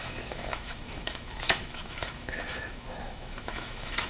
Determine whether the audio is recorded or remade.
remade